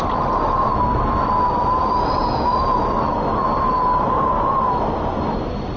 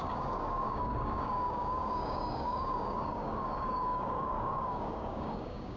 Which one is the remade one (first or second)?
second